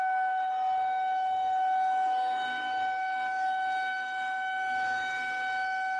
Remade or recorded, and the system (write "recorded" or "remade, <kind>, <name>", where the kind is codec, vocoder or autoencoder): remade, autoencoder, DAC-VAE